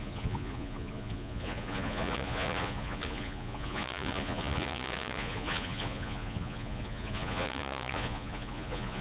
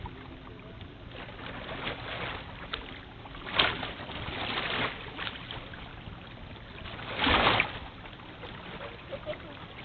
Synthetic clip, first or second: first